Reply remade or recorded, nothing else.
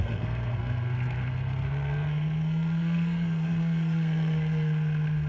remade